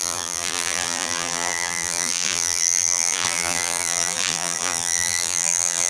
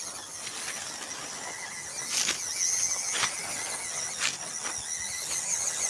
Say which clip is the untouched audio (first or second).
second